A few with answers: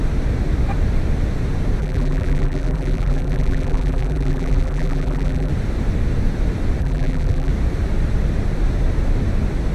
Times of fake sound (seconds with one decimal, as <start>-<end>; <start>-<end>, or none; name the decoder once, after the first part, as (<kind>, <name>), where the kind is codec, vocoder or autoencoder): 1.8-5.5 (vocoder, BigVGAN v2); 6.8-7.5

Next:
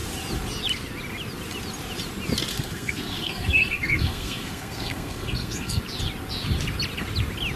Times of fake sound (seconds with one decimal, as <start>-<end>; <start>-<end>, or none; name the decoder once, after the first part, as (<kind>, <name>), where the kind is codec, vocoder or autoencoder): 2.5-5.8 (codec, SNAC)

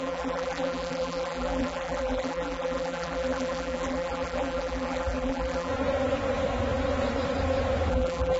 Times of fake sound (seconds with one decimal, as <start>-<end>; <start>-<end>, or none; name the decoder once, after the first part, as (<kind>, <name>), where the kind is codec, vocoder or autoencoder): 0.0-5.7 (vocoder, BigVGAN v2); 7.9-8.4